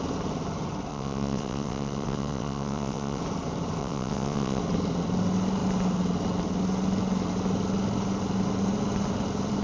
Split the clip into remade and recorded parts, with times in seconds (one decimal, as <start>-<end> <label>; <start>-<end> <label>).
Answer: 0.0-0.9 recorded; 0.9-3.2 remade; 3.2-3.8 recorded; 3.8-4.6 remade; 4.6-9.6 recorded